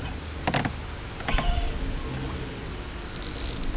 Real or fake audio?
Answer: real